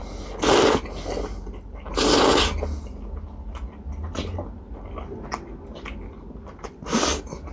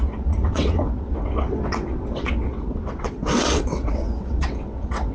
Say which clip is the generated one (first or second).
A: second